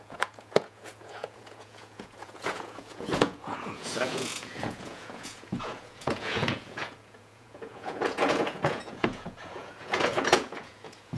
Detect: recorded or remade remade